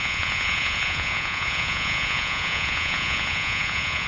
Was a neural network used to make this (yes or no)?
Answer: yes